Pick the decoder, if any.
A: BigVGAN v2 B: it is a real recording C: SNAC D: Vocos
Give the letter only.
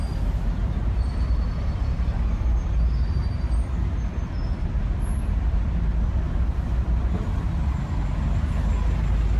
B